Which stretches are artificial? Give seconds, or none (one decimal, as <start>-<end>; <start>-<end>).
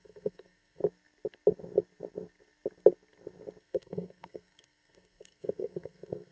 0.0-0.8; 3.6-6.3